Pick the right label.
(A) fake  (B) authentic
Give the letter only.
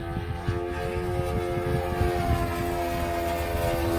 B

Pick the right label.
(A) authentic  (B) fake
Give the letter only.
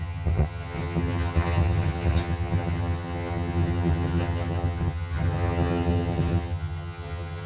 B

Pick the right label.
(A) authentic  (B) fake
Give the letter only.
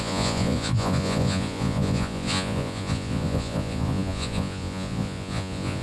B